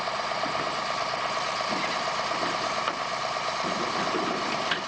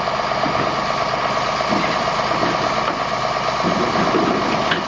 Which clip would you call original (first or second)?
second